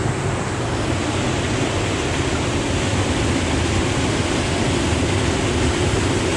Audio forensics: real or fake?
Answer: real